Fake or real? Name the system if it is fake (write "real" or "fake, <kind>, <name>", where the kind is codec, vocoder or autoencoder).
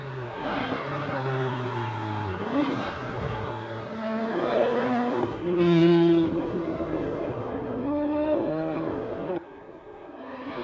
fake, codec, SNAC